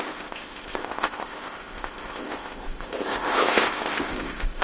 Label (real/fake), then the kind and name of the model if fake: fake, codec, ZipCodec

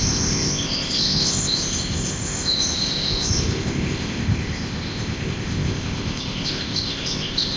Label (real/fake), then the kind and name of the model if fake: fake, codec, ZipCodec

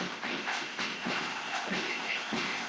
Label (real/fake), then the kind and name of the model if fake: fake, codec, ZipCodec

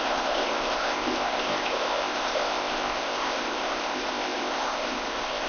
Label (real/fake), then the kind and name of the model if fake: fake, codec, ZipCodec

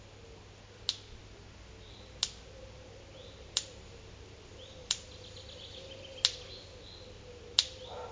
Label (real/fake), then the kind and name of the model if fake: real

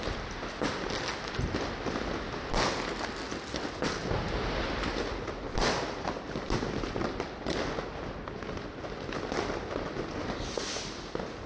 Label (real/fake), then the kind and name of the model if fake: real